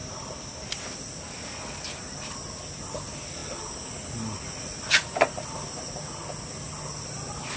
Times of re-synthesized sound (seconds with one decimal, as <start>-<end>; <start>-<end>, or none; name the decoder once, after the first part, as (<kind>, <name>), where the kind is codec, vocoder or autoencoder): none

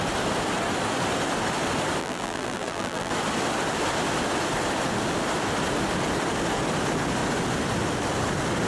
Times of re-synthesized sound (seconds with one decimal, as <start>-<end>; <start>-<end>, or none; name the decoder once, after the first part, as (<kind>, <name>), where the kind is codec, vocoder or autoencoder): 2.0-3.1 (vocoder, BigVGAN v2)

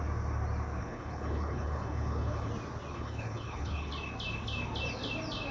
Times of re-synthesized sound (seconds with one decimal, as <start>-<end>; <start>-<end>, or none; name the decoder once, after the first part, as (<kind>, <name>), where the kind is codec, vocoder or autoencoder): 0.8-2.5 (codec, HILCodec); 2.9-3.9

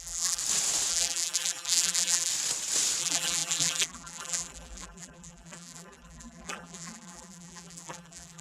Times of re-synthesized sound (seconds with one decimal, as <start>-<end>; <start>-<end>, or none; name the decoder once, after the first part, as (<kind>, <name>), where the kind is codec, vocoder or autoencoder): 0.0-0.4 (vocoder, BigVGAN v2); 0.9-2.3; 3.0-8.4

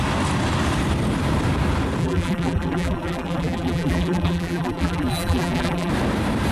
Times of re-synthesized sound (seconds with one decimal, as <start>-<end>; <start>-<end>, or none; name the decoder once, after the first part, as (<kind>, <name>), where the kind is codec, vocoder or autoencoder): 2.0-5.9 (vocoder, BigVGAN v2)

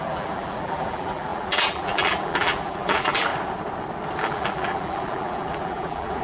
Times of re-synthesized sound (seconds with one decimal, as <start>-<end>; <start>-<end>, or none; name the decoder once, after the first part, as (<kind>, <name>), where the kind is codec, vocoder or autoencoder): 0.0-3.3 (vocoder, BigVGAN v2); 4.2-6.2

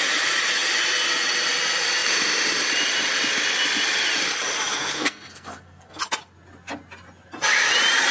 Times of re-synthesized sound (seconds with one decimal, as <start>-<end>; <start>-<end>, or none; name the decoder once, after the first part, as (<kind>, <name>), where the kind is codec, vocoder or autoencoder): 4.7-6.0 (codec, SNAC)